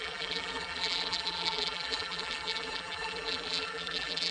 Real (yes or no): no